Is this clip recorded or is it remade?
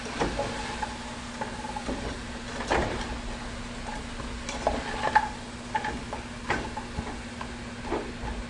recorded